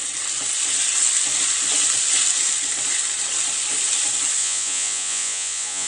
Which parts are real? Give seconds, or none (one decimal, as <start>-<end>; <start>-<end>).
0.0-4.4